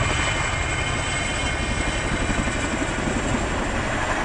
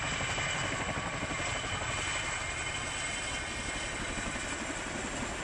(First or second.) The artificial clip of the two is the second